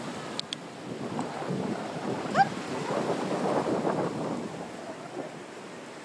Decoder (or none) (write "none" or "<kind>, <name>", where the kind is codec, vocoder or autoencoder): none